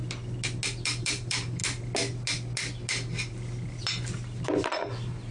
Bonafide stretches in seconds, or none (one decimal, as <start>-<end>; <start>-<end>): 0.0-1.0; 1.6-4.4